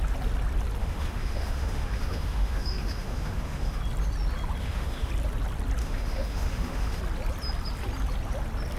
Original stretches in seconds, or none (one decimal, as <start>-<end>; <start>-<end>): 0.0-0.8; 3.8-4.6; 5.1-5.8; 7.0-8.8